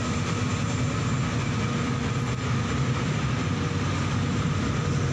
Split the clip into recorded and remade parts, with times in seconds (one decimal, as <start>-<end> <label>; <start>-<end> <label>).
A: 0.0-5.1 recorded